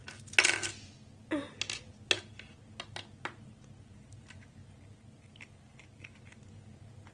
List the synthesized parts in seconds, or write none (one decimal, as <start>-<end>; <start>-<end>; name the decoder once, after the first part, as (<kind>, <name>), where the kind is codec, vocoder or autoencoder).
none